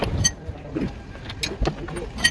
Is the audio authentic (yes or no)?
yes